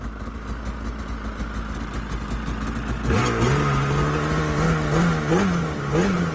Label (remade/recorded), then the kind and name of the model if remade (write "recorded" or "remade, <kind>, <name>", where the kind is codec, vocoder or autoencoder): recorded